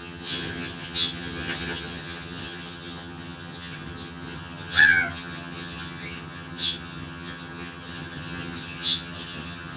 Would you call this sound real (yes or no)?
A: no